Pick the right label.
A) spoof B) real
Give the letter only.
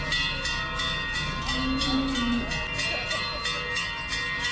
B